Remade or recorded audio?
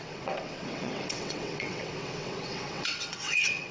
remade